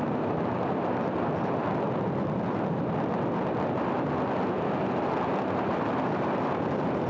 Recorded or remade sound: recorded